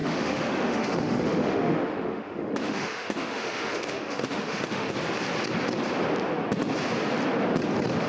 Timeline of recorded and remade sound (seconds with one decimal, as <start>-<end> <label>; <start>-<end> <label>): 0.0-4.9 remade; 4.9-8.1 recorded